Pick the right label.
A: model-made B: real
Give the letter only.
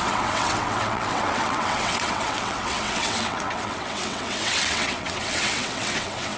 A